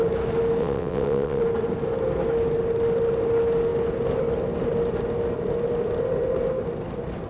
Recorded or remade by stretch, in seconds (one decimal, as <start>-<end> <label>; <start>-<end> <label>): 0.0-0.6 recorded; 0.6-1.4 remade; 1.4-7.3 recorded